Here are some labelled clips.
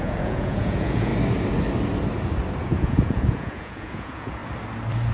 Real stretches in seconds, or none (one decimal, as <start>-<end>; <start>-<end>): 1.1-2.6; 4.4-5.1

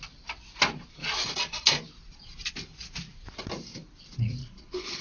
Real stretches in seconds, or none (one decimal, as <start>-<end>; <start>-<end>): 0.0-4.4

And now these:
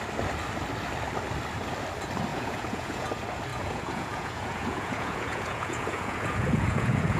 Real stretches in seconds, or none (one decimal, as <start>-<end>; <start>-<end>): 0.0-2.3; 3.1-3.5

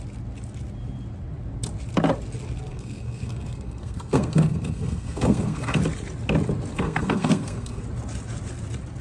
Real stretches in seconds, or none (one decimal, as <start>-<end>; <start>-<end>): 0.0-2.7; 5.8-6.7; 7.8-9.0

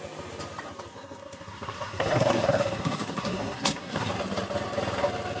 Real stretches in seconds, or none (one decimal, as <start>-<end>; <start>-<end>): 0.0-0.9; 4.1-5.4